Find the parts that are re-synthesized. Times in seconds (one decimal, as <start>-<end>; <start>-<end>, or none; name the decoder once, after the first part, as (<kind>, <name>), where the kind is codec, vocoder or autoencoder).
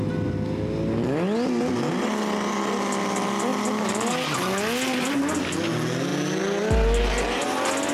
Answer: none